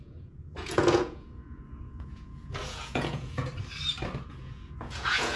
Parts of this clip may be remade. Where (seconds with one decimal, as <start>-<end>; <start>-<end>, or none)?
0.0-3.5; 4.2-5.4